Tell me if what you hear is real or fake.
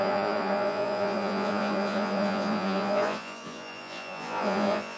fake